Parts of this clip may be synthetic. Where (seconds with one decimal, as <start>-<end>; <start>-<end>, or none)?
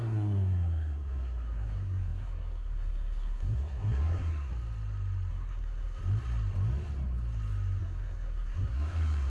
0.0-4.5; 5.3-6.0; 7.8-9.3